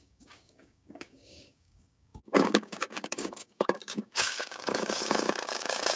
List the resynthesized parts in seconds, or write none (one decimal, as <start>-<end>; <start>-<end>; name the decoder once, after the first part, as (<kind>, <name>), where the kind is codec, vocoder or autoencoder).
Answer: 0.0-6.0 (codec, DAC)